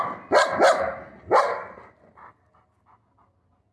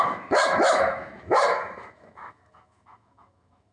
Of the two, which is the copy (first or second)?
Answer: second